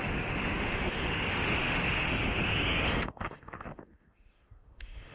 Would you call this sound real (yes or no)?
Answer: no